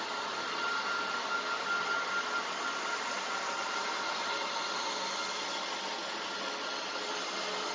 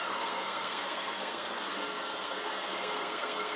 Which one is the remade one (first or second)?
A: second